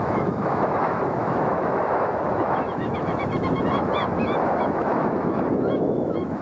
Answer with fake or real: fake